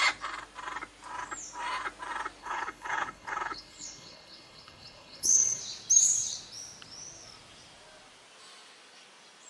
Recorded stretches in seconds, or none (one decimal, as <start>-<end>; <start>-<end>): 0.0-2.4; 5.6-9.5